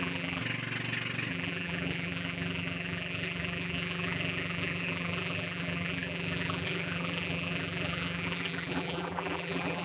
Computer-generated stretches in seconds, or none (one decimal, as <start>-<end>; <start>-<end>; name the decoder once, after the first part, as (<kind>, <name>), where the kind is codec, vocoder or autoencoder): 0.0-0.4 (vocoder, BigVGAN v2); 1.3-9.8